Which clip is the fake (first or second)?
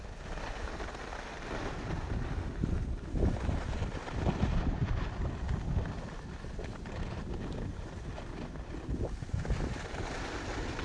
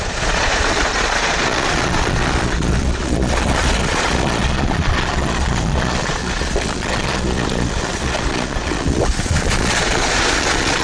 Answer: second